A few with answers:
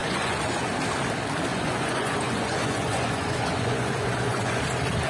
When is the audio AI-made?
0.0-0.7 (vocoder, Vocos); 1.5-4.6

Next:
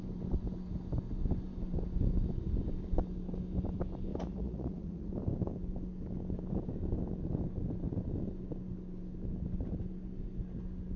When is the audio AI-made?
4.1-5.1 (vocoder, Vocos)

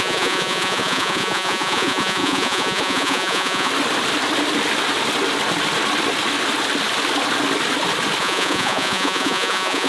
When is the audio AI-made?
0.0-3.7 (vocoder, Vocos); 8.2-9.9

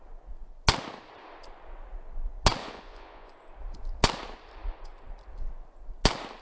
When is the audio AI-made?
2.6-3.3 (vocoder, Vocos)